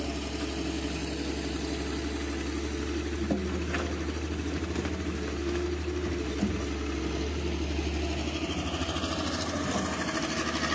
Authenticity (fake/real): real